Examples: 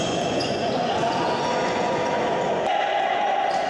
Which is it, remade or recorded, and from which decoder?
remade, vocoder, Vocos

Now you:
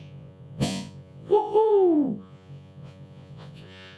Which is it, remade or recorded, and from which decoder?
remade, vocoder, Vocos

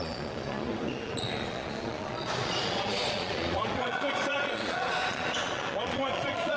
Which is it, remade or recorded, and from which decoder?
remade, vocoder, Vocos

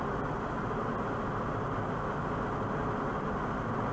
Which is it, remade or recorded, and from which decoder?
recorded